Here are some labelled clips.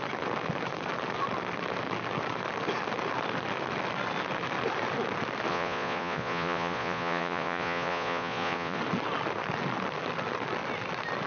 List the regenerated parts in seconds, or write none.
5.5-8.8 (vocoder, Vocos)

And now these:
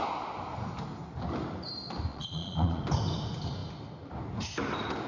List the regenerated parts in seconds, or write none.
2.1-2.8 (vocoder, Vocos)

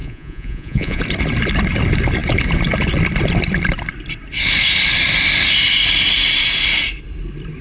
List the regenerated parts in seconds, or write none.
0.0-1.0 (vocoder, Vocos)

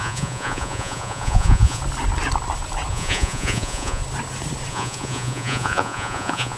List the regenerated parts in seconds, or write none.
0.0-1.8 (vocoder, Vocos); 2.9-4.0; 4.7-6.6

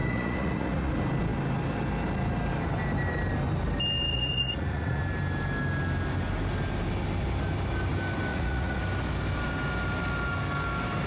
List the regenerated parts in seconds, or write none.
0.0-0.9 (vocoder, Vocos); 4.1-5.0; 8.3-8.8

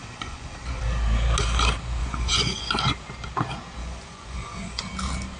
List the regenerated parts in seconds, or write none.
0.0-0.8 (vocoder, Vocos); 2.0-2.7; 3.8-4.8

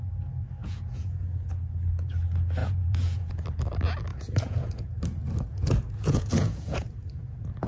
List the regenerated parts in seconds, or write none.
0.6-1.3 (vocoder, Vocos); 2.6-3.3; 4.1-4.9; 5.5-6.9

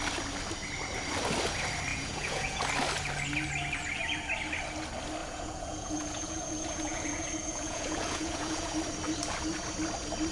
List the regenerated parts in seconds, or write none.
1.9-2.6 (vocoder, Vocos); 5.2-8.7